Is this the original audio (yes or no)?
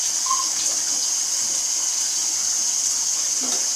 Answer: yes